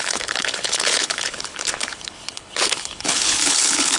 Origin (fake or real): fake